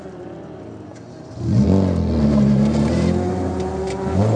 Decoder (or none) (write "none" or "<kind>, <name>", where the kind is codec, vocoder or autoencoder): none